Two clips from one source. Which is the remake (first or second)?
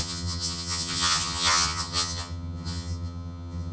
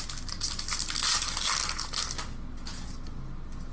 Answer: first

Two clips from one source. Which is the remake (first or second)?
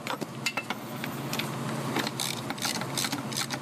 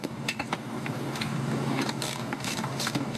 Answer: second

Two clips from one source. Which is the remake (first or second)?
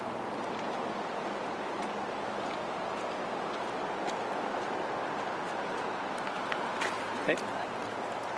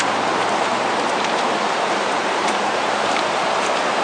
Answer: second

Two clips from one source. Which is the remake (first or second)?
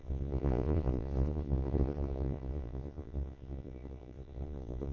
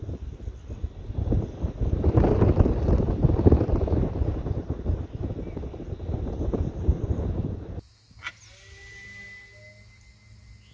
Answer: first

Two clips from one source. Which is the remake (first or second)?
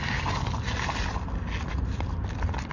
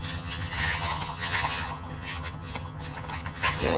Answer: second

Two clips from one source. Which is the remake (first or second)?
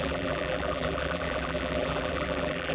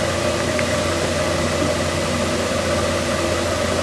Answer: first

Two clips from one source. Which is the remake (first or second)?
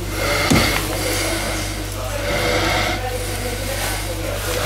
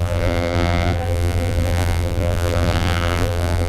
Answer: second